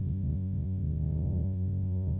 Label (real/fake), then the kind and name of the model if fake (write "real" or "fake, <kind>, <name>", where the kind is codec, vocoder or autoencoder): fake, vocoder, Vocos